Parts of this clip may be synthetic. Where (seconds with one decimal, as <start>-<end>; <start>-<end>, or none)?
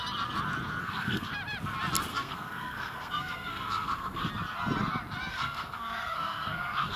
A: 0.8-1.3; 2.1-4.3; 5.3-7.0